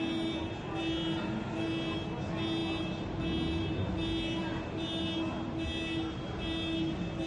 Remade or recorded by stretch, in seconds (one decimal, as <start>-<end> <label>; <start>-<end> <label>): 0.0-7.3 recorded